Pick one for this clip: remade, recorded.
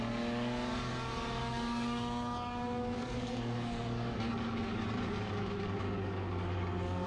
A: remade